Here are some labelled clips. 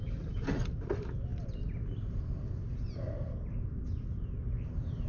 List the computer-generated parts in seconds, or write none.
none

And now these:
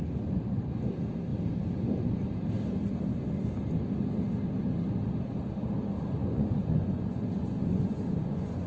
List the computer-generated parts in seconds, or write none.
6.2-8.7 (vocoder, Vocos)

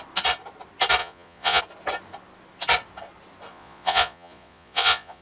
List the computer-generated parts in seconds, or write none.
1.0-1.6 (vocoder, Vocos); 3.5-5.2

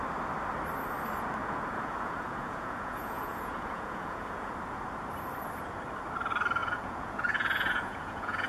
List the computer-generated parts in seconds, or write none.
1.4-4.5 (vocoder, Vocos); 6.6-8.5